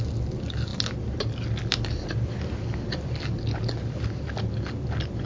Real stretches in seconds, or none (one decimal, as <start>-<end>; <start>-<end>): 0.0-5.2